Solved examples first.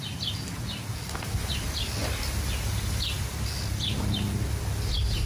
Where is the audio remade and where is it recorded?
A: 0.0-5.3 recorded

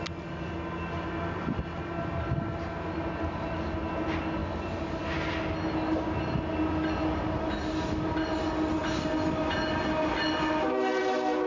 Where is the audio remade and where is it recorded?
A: 0.0-11.5 recorded

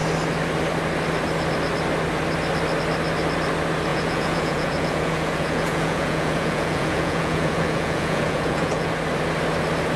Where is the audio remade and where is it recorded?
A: 0.0-3.9 recorded; 3.9-8.9 remade; 8.9-10.0 recorded